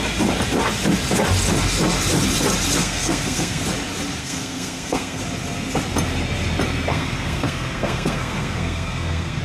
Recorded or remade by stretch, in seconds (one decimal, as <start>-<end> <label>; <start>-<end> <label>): 0.0-2.8 recorded; 2.8-3.6 remade; 3.6-4.2 recorded; 4.2-5.2 remade; 5.2-6.9 recorded; 6.9-9.4 remade